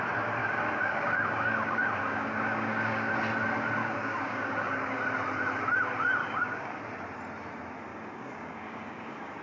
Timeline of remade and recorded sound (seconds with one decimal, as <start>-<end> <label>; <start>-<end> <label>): 0.0-0.4 recorded; 0.4-3.1 remade; 3.1-3.8 recorded; 3.8-5.0 remade; 5.0-6.2 recorded; 6.2-6.8 remade; 6.8-7.9 recorded; 7.9-9.4 remade